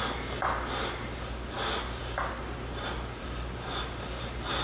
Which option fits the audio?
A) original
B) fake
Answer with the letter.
A